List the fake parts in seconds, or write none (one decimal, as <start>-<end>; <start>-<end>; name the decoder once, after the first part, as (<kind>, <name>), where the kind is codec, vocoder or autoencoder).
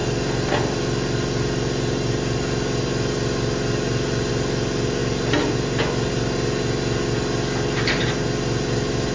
none